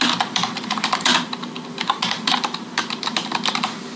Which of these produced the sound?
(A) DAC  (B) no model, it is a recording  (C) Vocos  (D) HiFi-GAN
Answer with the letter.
B